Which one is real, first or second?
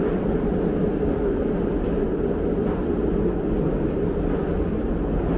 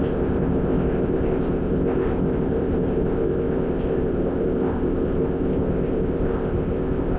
first